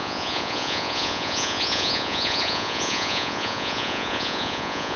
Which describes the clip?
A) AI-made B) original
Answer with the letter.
A